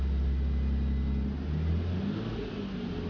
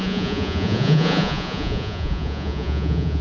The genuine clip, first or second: first